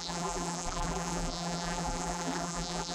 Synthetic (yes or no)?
yes